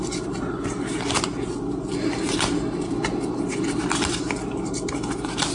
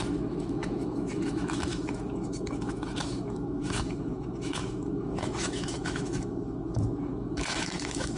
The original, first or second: first